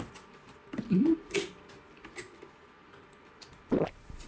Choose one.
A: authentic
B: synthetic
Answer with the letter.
A